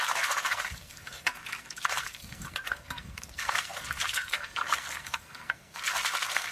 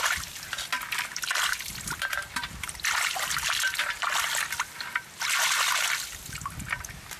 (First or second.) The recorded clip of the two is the second